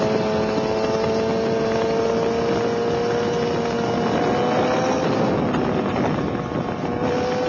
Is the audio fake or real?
real